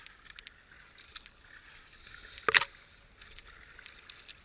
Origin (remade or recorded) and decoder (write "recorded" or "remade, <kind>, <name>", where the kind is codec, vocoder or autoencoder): recorded